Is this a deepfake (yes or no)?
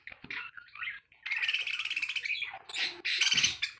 no